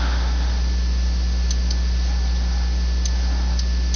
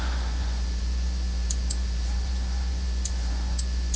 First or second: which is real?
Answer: first